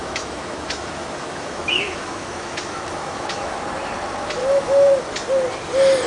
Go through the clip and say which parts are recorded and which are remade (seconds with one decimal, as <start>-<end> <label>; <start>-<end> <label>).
0.0-3.6 remade; 3.6-4.4 recorded; 4.4-4.9 remade; 4.9-6.1 recorded